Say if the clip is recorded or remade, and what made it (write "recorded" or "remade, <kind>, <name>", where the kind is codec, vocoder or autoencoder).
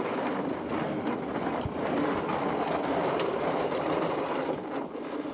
recorded